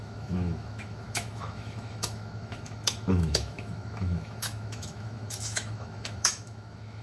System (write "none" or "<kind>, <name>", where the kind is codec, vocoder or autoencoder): autoencoder, DAC-VAE